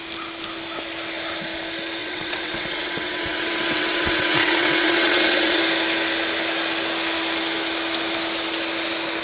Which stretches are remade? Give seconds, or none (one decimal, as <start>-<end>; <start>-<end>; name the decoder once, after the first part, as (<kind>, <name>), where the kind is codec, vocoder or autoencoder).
2.0-5.6 (vocoder, WaveNeXt)